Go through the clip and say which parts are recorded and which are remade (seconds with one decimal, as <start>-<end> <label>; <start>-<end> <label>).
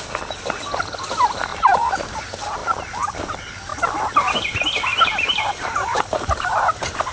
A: 0.0-1.5 recorded; 1.5-2.2 remade; 2.2-4.9 recorded; 4.9-7.1 remade